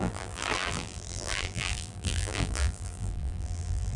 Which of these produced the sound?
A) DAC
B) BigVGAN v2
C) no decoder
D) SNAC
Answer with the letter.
B